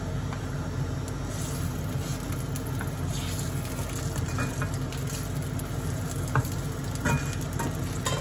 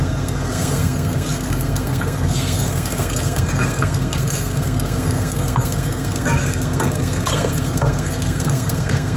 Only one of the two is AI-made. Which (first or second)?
second